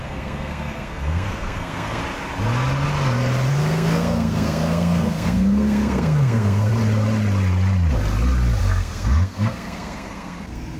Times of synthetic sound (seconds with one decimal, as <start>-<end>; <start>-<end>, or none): 0.0-2.0; 3.5-6.7; 8.6-10.8